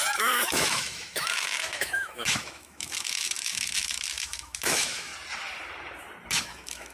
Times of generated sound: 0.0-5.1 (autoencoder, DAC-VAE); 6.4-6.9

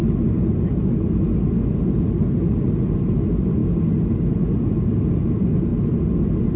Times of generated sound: none